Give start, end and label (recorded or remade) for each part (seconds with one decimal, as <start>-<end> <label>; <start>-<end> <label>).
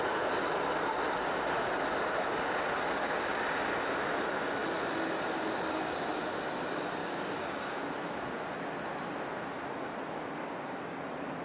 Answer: 0.0-7.0 recorded; 7.0-7.8 remade; 7.8-10.4 recorded; 10.4-11.0 remade; 11.0-11.4 recorded